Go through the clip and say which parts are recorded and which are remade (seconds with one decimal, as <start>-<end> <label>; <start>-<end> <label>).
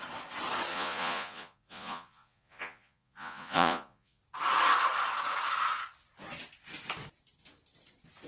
0.0-0.7 recorded; 0.7-4.2 remade; 4.2-8.3 recorded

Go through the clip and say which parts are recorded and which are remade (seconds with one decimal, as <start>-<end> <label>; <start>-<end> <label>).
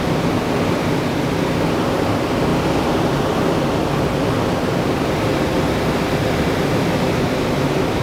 0.0-8.0 recorded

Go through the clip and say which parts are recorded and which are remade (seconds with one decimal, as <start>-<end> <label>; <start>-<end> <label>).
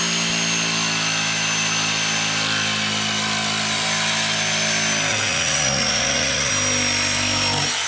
0.0-5.1 recorded; 5.1-6.5 remade; 6.5-7.9 recorded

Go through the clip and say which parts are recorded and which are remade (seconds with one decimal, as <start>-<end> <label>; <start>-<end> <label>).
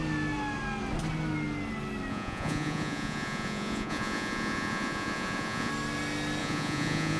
0.0-2.1 recorded; 2.1-5.7 remade; 5.7-6.4 recorded; 6.4-7.2 remade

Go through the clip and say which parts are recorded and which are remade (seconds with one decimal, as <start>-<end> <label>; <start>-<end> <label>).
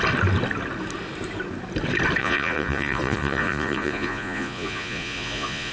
0.0-2.2 recorded; 2.2-5.7 remade